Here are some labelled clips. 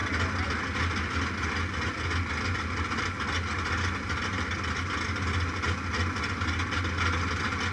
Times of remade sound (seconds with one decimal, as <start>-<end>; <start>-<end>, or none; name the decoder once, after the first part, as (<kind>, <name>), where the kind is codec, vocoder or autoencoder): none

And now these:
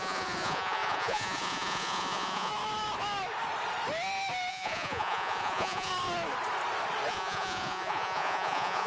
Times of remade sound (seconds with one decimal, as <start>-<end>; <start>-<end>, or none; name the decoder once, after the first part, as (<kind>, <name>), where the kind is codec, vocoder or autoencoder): 0.0-2.5 (vocoder, Vocos); 4.5-5.9; 7.1-8.9

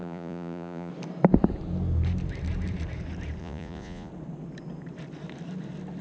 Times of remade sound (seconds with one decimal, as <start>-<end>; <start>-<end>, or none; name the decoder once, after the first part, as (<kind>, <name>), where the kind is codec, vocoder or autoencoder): 0.0-0.9 (vocoder, Vocos); 3.4-4.1

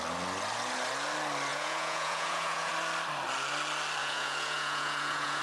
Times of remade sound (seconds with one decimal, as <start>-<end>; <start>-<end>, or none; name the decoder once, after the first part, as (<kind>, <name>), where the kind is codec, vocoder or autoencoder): 1.5-2.7 (vocoder, Vocos); 4.0-5.4

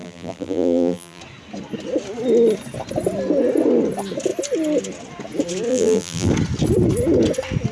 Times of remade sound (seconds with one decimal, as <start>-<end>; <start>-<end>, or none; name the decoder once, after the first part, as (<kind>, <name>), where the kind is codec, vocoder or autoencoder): 0.0-1.2 (vocoder, BigVGAN v2); 5.7-6.3